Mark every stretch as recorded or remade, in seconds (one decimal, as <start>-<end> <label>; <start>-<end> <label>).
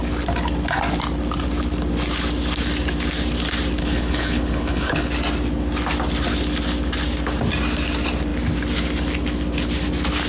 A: 0.0-3.8 recorded; 3.8-5.1 remade; 5.1-10.3 recorded